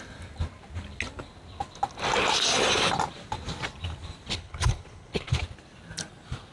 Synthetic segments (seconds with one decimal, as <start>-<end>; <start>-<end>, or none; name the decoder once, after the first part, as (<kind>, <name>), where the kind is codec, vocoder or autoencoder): 4.3-5.4 (codec, HILCodec)